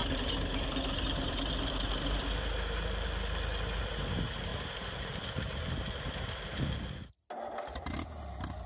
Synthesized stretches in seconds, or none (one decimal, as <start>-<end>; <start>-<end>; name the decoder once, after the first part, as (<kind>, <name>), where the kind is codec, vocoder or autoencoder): 0.0-2.2 (vocoder, BigVGAN v2); 4.5-5.7